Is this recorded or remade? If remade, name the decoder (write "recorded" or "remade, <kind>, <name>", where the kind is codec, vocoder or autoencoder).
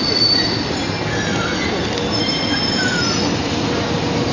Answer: recorded